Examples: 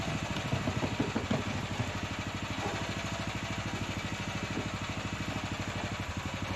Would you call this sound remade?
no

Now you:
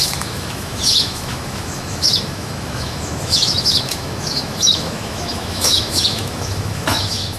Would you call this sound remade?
yes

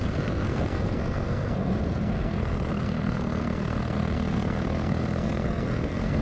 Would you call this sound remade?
yes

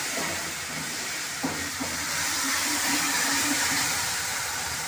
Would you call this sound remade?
yes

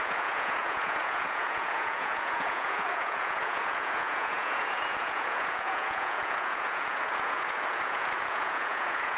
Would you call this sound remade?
yes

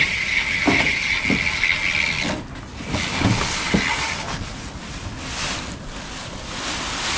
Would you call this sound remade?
no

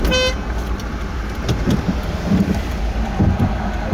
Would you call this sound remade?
no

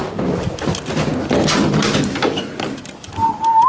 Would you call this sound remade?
no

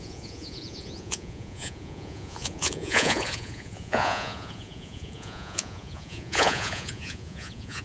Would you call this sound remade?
yes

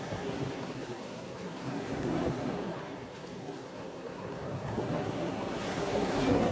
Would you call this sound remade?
yes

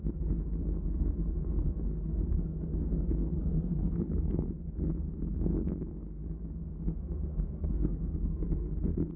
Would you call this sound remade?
yes